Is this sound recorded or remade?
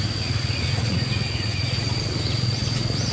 remade